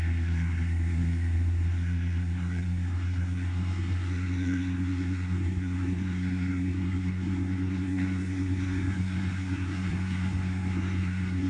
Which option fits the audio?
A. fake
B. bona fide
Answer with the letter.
A